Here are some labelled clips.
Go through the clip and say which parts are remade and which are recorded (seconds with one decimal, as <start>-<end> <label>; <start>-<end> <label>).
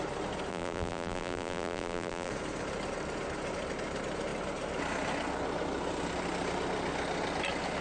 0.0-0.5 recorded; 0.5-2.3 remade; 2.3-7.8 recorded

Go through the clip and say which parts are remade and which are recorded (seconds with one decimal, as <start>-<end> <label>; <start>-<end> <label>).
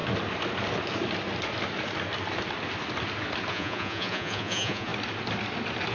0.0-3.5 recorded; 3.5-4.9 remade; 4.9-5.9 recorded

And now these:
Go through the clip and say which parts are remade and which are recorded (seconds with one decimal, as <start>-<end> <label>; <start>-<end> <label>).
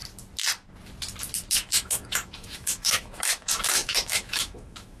0.0-1.5 recorded; 1.5-5.0 remade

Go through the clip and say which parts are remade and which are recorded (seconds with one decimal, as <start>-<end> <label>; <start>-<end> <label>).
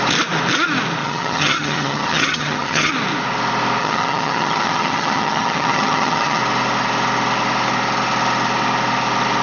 0.0-1.0 recorded; 1.0-2.9 remade; 2.9-3.8 recorded; 3.8-6.4 remade; 6.4-9.4 recorded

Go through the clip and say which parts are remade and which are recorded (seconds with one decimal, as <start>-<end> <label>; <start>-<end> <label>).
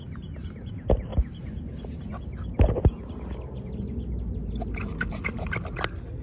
0.0-6.2 recorded